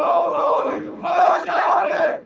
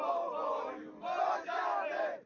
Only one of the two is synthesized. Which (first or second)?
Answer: first